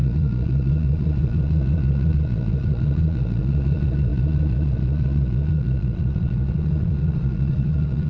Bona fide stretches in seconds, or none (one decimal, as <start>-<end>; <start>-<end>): none